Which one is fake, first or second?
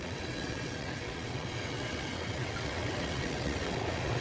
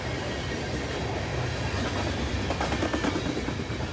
first